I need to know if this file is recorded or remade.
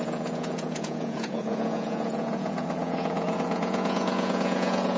remade